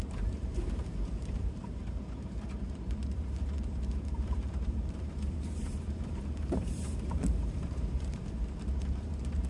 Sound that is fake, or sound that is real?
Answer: fake